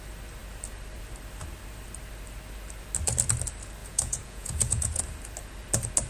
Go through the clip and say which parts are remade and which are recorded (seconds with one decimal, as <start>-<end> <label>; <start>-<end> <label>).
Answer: 0.0-3.8 recorded; 3.8-5.0 remade; 5.0-6.1 recorded